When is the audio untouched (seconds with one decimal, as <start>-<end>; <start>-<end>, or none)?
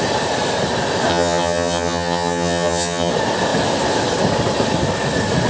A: 0.0-1.1; 3.1-5.5